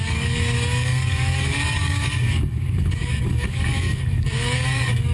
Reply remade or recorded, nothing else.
remade